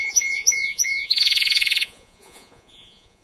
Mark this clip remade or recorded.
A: remade